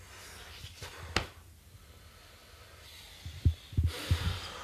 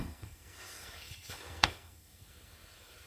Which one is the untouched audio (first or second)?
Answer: first